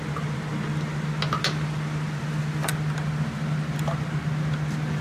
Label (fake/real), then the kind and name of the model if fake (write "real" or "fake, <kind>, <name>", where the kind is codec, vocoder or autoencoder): real